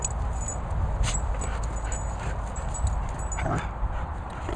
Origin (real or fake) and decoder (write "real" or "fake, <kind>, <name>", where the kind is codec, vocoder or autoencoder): real